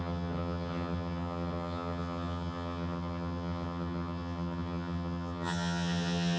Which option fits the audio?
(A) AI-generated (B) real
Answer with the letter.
A